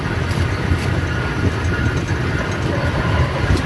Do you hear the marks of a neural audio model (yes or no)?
no